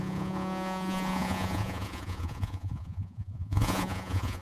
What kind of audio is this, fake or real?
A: fake